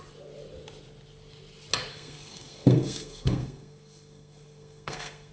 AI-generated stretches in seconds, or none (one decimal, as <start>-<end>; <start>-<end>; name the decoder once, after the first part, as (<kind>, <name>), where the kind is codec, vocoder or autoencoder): 1.9-5.3 (codec, SNAC)